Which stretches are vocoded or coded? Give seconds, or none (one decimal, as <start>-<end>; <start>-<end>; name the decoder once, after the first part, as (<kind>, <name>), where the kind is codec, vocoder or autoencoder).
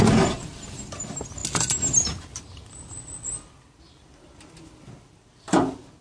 none